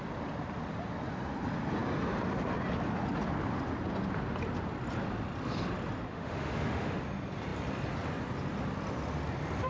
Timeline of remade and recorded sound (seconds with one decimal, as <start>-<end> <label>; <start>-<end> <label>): 0.0-6.1 recorded; 6.1-7.0 remade; 7.0-9.7 recorded